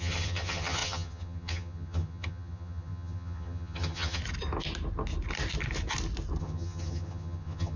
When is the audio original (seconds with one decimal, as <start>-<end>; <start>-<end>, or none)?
4.2-6.4